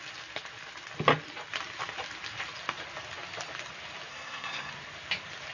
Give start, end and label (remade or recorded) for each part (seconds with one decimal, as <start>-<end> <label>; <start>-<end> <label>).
0.0-4.1 recorded; 4.1-4.7 remade; 4.7-5.5 recorded